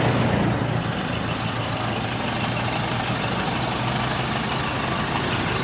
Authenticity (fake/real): real